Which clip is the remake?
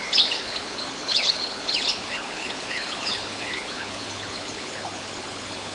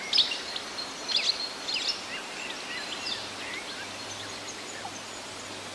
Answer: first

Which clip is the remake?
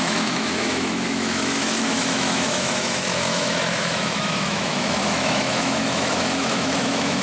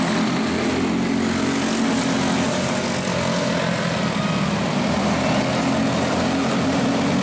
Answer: first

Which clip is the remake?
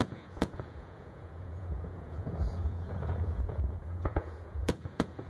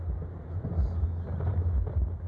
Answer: first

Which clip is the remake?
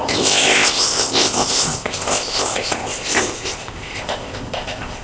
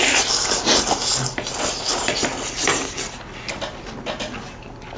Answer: first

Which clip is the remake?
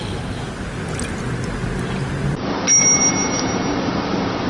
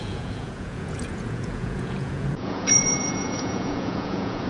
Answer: second